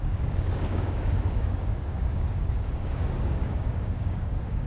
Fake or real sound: fake